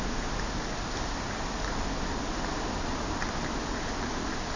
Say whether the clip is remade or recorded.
recorded